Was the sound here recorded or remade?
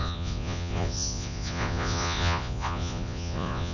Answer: remade